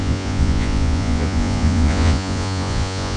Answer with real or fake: fake